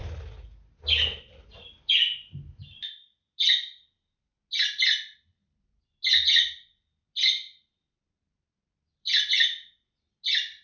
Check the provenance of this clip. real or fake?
real